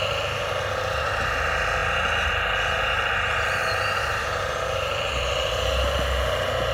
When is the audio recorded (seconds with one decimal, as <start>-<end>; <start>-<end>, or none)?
0.0-6.7